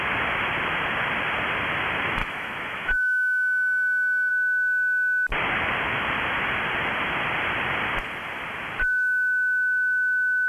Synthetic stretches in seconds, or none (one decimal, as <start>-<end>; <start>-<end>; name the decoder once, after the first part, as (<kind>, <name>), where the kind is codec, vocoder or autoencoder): 2.2-4.3 (autoencoder, DAC-VAE)